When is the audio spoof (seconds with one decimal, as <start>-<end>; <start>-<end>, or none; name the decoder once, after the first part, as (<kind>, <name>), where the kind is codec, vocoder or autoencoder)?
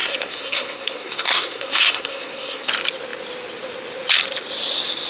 0.0-2.7 (codec, SNAC)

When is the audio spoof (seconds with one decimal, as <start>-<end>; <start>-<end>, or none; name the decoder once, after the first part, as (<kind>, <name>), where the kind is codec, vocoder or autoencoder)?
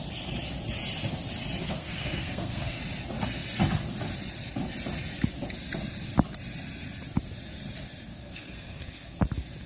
1.6-2.8 (codec, SNAC); 8.1-9.2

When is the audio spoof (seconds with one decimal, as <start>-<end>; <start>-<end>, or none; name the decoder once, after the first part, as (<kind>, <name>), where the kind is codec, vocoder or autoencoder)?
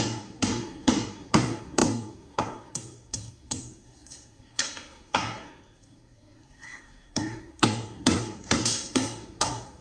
0.0-9.8 (codec, SNAC)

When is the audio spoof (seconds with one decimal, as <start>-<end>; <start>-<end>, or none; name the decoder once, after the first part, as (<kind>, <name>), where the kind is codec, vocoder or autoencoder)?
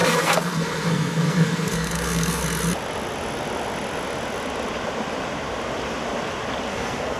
0.0-2.4 (codec, SNAC); 6.7-7.2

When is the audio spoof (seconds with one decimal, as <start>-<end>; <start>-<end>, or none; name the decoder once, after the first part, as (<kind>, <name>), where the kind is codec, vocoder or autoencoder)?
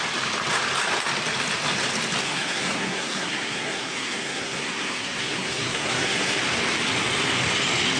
2.2-6.4 (codec, SNAC)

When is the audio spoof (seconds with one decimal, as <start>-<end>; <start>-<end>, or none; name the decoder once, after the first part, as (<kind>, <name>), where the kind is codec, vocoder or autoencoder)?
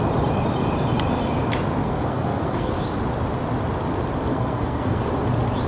1.8-2.7 (codec, SNAC); 4.3-5.0